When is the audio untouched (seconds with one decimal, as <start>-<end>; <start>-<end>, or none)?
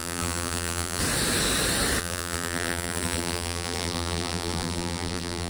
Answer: 1.0-2.0